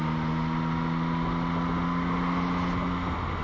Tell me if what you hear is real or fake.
real